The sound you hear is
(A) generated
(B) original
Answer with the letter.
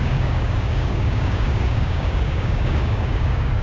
A